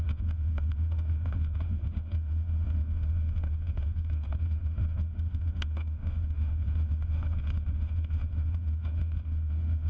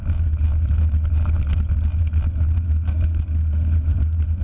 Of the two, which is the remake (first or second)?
first